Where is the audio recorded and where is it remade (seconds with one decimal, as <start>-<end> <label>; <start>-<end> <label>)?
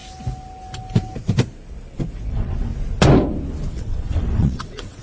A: 0.0-2.3 recorded; 2.3-2.7 remade; 2.7-3.7 recorded; 3.7-5.0 remade